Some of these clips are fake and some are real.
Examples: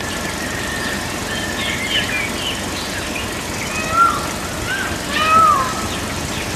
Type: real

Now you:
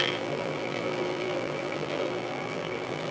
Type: fake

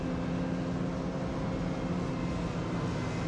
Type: real